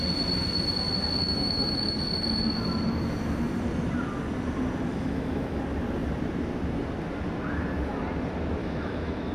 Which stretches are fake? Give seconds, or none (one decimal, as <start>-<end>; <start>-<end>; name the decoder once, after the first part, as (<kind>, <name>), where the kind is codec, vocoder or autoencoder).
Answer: 1.2-2.0 (autoencoder, DAC-VAE); 4.9-5.6; 8.6-9.3